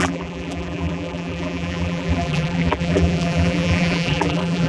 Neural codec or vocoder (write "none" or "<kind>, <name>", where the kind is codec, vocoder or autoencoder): vocoder, BigVGAN v2